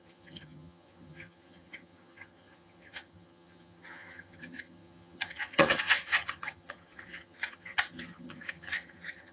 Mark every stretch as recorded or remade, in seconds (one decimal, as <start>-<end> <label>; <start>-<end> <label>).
0.0-9.3 remade